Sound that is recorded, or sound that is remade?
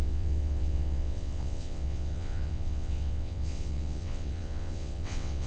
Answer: remade